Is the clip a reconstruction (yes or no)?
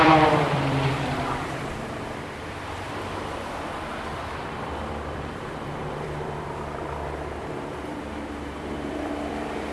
yes